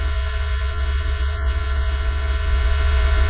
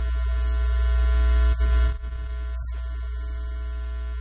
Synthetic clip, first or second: first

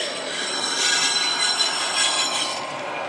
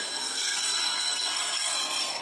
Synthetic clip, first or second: second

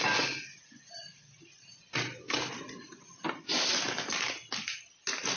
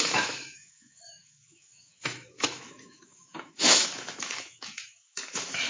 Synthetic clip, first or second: second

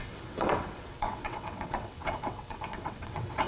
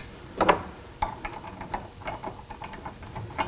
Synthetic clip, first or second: first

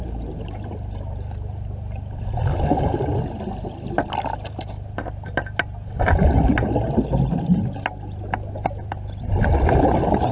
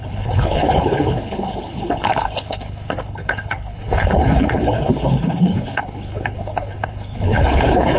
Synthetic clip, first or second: second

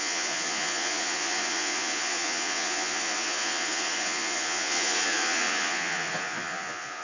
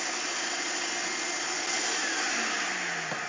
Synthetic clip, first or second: first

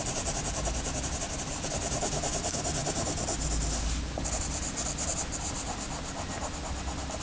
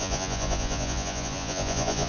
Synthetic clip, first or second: second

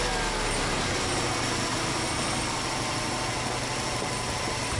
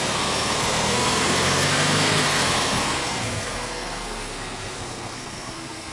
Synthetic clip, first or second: second